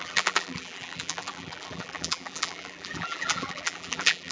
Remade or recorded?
remade